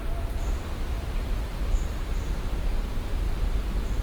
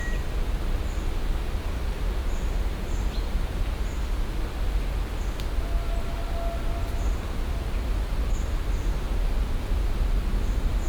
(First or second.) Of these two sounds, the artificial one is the first